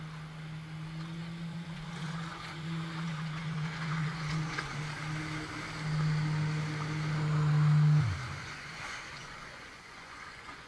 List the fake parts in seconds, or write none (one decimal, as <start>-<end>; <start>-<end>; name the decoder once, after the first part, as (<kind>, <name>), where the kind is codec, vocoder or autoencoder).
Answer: 1.5-4.8 (vocoder, Vocos); 8.2-10.7

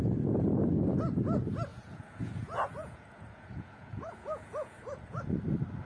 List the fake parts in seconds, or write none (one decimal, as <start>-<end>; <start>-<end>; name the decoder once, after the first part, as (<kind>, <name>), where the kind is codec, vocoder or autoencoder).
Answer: 1.7-5.2 (vocoder, Vocos)